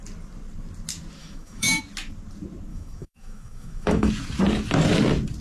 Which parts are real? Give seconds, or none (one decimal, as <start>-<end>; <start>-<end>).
0.0-1.2; 1.8-2.7; 4.1-5.4